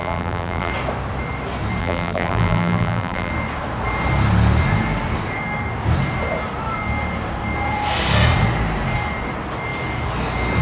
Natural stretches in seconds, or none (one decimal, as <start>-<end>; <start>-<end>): 0.7-1.8; 3.3-10.6